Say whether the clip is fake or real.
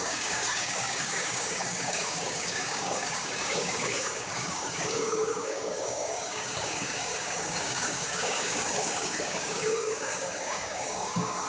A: fake